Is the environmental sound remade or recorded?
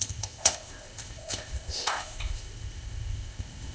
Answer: remade